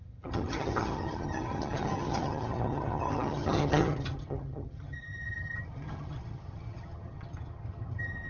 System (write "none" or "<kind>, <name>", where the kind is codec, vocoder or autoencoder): vocoder, HiFi-GAN